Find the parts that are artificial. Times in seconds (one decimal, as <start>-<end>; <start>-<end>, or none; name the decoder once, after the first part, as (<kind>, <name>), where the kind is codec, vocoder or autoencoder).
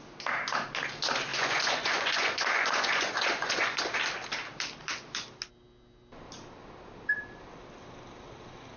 1.3-3.8 (vocoder, Vocos)